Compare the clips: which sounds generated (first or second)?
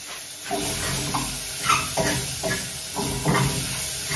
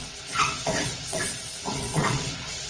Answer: second